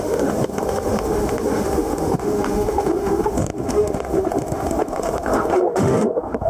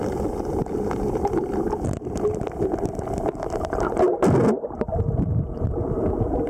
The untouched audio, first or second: second